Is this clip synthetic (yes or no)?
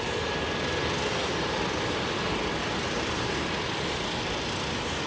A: no